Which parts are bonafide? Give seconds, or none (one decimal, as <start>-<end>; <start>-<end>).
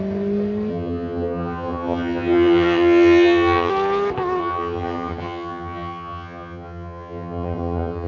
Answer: 0.0-0.7; 3.7-4.4